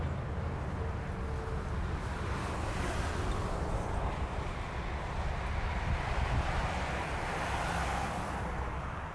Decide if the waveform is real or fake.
real